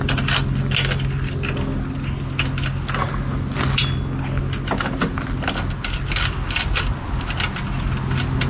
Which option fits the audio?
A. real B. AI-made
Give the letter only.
A